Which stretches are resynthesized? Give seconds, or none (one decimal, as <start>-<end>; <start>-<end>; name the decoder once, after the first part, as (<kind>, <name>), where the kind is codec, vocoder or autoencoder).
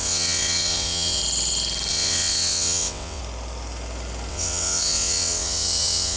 0.0-1.2 (vocoder, WaveNeXt); 1.9-3.2; 4.3-6.2